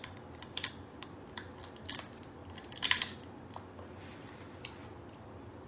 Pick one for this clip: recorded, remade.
recorded